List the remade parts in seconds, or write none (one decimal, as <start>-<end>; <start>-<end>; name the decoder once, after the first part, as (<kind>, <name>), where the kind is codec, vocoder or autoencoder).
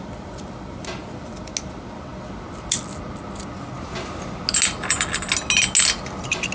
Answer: none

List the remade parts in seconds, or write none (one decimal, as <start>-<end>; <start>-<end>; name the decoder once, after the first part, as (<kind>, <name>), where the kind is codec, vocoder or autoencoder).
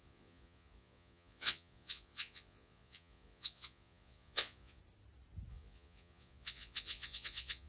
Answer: 0.0-4.8 (vocoder, Vocos); 5.5-7.7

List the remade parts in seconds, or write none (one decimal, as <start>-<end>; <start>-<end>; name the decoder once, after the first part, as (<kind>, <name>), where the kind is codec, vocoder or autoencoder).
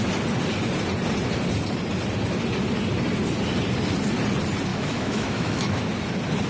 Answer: 4.7-5.8 (autoencoder, DAC-VAE)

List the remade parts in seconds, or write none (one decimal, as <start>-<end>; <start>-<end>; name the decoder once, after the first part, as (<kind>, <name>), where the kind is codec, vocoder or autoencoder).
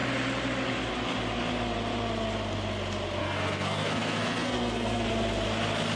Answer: 3.2-5.1 (codec, SNAC)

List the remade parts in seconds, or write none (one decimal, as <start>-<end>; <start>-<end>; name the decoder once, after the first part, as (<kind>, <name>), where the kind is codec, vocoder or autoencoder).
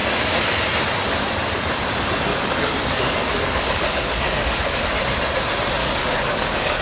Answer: 2.3-4.8 (codec, DAC); 5.8-6.8